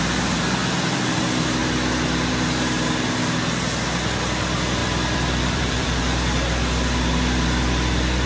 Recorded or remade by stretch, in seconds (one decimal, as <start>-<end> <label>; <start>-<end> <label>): 0.0-0.6 recorded; 0.6-1.2 remade; 1.2-1.6 recorded; 1.6-2.3 remade; 2.3-4.8 recorded; 4.8-6.0 remade; 6.0-8.3 recorded